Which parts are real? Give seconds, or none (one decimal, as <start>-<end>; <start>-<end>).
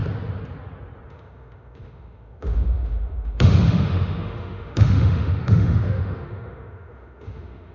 0.0-1.1